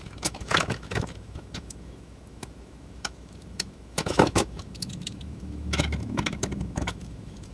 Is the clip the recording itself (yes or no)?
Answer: no